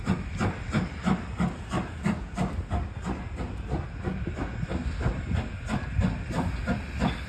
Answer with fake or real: real